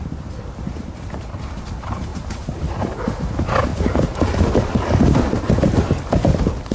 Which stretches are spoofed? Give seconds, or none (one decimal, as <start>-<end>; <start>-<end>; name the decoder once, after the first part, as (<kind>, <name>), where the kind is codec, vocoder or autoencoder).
none